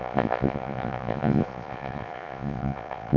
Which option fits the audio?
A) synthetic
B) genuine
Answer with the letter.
A